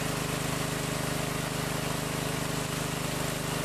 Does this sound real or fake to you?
real